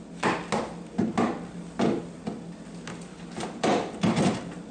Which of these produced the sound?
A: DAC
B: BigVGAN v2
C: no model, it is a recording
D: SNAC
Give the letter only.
C